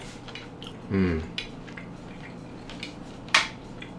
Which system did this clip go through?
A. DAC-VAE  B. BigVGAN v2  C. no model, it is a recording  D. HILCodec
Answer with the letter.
C